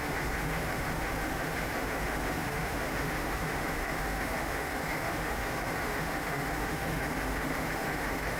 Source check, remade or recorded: remade